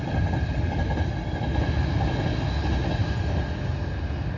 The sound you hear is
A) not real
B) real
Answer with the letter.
B